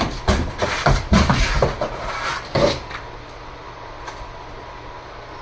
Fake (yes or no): yes